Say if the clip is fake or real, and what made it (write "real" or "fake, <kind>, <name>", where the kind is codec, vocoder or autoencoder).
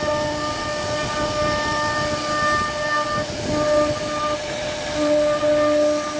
real